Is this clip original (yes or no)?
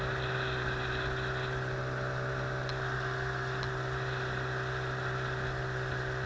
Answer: yes